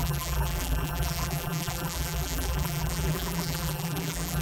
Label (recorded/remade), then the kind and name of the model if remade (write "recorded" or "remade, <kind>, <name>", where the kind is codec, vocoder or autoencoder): remade, vocoder, BigVGAN v2